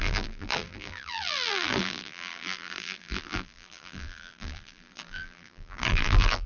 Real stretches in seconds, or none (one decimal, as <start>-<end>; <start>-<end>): none

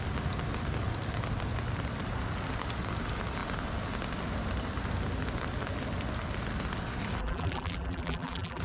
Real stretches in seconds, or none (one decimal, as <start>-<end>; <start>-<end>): 0.0-7.2

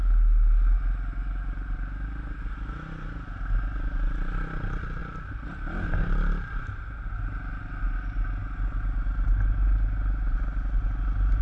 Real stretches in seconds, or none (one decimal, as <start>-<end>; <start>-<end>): 0.0-11.4

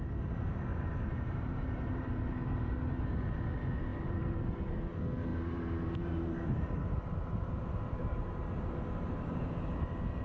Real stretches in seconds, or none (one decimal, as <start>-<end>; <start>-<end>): 0.0-0.7; 2.7-3.9; 4.5-5.3; 9.4-10.2

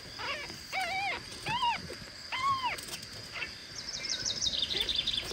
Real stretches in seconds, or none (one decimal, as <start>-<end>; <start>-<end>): 0.0-1.3; 1.9-3.6

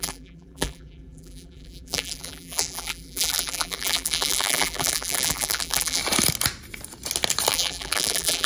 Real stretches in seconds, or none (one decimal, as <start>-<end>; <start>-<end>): 6.0-7.5